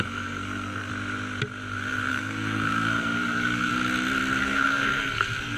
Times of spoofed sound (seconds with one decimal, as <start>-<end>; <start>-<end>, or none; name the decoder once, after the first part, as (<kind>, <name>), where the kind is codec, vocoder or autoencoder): 0.0-0.9 (codec, SNAC); 2.1-3.7; 4.4-5.6